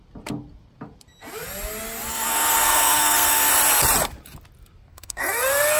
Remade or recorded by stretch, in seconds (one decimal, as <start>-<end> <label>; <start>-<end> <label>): 0.0-2.1 recorded; 2.1-3.5 remade; 3.5-4.9 recorded; 4.9-5.8 remade